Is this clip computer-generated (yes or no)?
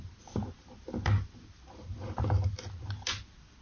no